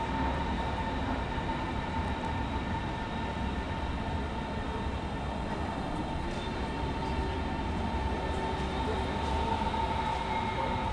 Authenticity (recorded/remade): recorded